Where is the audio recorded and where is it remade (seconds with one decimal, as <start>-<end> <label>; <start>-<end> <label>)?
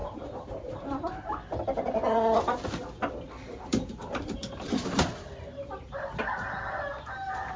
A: 0.0-1.3 remade; 1.3-3.7 recorded; 3.7-5.9 remade; 5.9-7.6 recorded